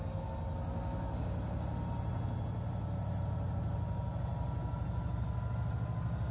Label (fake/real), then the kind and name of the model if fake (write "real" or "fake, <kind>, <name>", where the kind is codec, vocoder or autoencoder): real